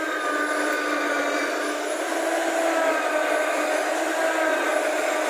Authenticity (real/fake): real